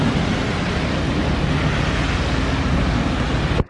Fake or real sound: real